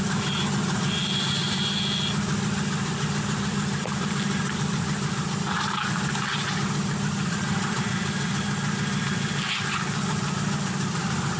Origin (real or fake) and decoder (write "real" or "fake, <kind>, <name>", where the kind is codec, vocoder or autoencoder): real